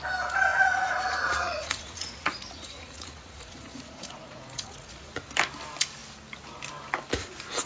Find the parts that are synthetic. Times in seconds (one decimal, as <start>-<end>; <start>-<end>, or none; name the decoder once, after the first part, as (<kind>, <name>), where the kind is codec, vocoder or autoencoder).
0.5-5.1 (vocoder, Vocos)